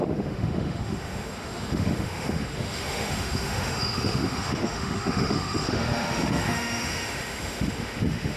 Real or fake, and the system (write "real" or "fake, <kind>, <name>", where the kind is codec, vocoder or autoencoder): fake, autoencoder, DAC-VAE